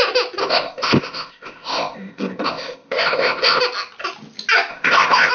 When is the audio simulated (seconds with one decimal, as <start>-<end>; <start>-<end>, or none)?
0.4-3.6; 4.7-5.3